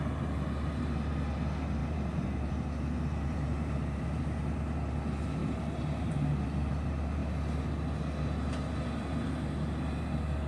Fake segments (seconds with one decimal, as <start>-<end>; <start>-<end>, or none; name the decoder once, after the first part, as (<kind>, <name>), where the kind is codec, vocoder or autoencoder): 1.8-4.2 (vocoder, BigVGAN v2); 5.4-6.1